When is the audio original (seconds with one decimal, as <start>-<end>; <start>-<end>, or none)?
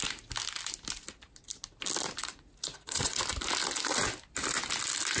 0.0-2.2; 3.2-5.2